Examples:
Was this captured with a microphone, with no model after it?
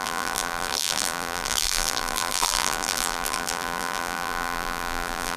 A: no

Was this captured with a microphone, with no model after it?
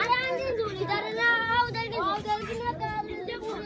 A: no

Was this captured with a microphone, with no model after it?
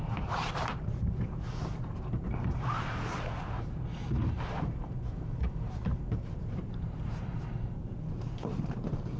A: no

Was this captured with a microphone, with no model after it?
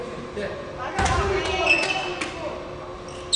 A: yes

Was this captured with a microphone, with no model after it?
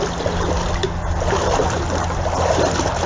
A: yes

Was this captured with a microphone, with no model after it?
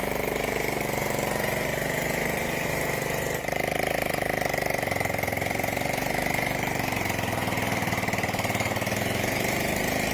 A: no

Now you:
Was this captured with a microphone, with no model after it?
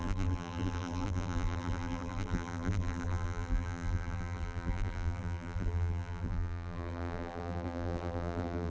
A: no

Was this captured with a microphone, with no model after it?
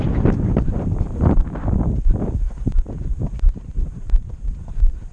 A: no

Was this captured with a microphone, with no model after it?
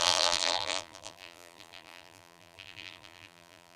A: no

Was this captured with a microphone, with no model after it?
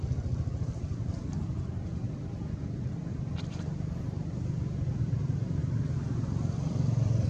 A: no